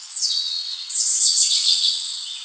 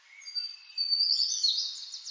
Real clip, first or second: second